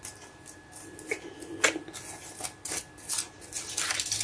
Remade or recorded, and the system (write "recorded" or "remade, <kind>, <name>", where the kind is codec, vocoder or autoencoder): recorded